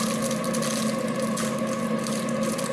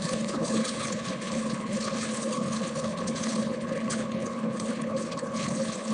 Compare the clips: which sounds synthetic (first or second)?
second